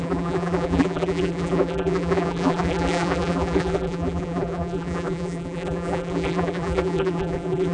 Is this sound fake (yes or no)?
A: yes